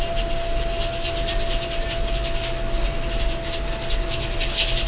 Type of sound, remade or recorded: recorded